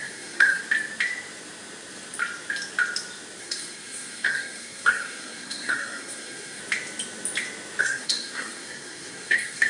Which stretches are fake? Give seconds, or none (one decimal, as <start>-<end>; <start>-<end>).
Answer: 0.0-0.6; 3.4-6.6; 7.8-9.7